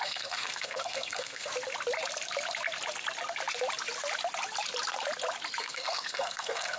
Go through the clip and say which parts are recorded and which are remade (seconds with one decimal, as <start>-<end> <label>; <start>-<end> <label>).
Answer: 0.0-1.5 remade; 1.5-5.6 recorded; 5.6-6.8 remade